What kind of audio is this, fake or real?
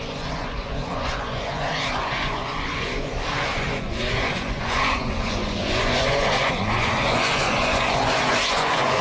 fake